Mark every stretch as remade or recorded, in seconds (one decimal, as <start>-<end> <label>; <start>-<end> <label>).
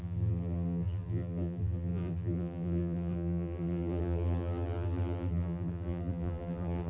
0.0-6.9 remade